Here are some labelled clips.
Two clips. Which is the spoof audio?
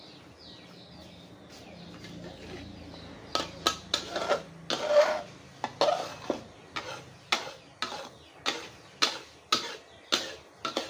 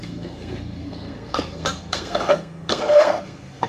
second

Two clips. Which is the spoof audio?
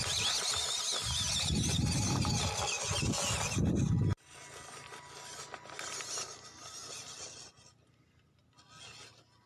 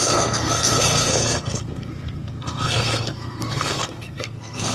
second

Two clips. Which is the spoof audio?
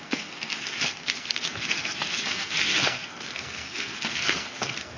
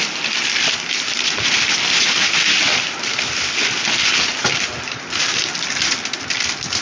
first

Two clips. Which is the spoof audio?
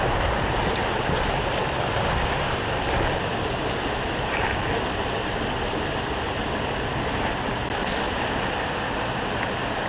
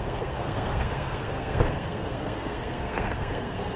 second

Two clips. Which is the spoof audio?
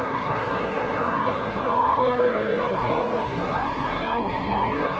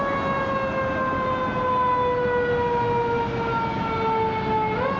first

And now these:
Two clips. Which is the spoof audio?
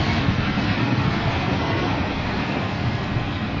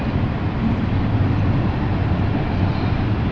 first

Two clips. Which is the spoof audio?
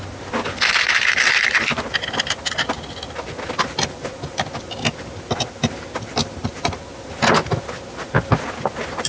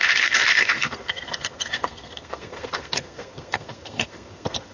second